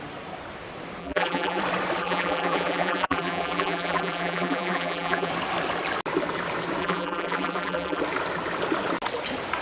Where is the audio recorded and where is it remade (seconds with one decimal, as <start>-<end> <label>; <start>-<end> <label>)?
0.0-1.0 recorded; 1.0-1.6 remade; 1.6-2.0 recorded; 2.0-5.3 remade; 5.3-6.8 recorded; 6.8-8.0 remade; 8.0-9.6 recorded